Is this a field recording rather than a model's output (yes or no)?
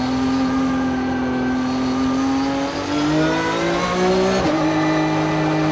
yes